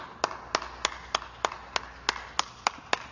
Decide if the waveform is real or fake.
real